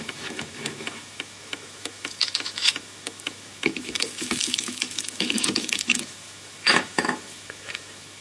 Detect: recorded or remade remade